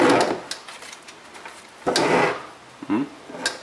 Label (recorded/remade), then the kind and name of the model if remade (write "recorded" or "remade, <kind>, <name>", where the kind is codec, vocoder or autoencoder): recorded